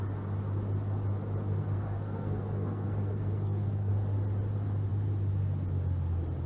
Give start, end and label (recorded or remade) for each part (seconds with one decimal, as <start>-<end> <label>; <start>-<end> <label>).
0.0-1.6 recorded; 1.6-3.9 remade; 3.9-6.5 recorded